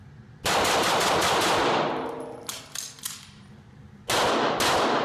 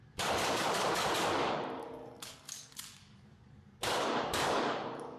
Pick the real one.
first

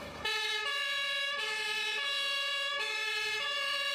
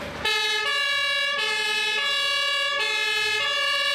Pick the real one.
second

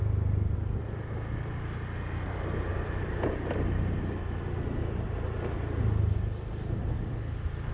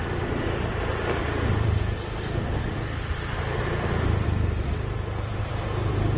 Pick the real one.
first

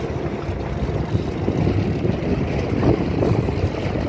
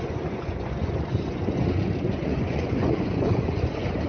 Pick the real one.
first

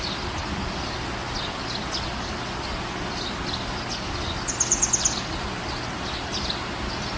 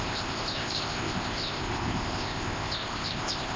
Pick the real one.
first